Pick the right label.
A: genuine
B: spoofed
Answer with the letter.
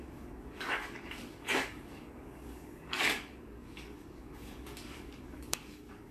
B